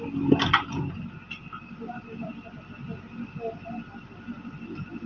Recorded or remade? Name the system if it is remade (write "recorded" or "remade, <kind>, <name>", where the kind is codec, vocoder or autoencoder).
recorded